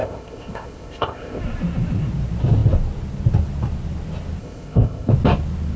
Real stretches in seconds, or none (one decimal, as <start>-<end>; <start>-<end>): 1.4-4.4; 5.1-5.8